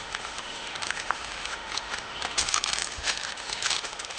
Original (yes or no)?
no